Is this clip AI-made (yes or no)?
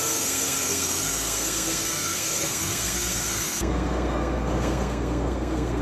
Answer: yes